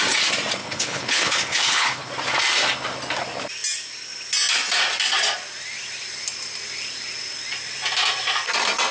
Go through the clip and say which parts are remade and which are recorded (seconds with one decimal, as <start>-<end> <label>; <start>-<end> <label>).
0.0-0.6 recorded; 0.6-2.1 remade; 2.1-8.9 recorded